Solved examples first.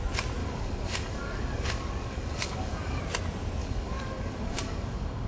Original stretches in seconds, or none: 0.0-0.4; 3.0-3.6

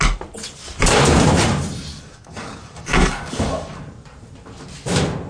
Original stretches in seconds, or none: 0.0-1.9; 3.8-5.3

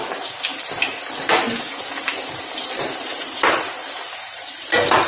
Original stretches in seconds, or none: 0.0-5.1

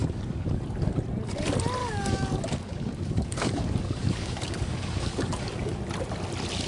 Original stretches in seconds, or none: 0.6-1.8; 5.8-6.7

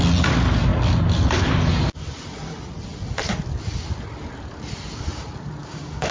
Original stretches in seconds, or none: 0.0-5.6

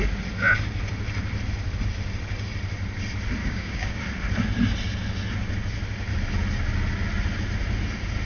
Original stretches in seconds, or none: 0.0-3.4; 4.0-8.2

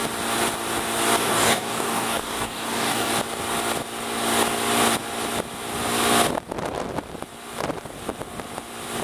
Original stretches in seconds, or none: 0.0-1.2; 3.1-9.0

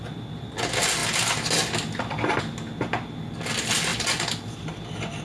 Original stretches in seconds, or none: 0.0-5.2